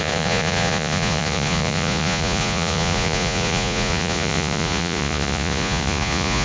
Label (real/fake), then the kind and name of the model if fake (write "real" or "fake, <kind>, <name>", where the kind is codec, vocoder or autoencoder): fake, vocoder, Vocos